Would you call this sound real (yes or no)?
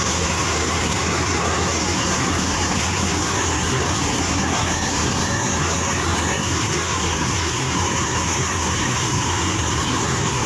no